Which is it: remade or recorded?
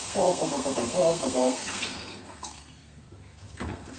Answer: remade